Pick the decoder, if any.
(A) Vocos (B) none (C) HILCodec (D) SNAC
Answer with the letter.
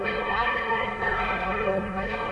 D